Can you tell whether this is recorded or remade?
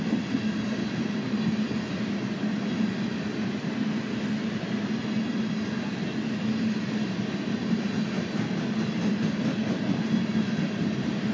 recorded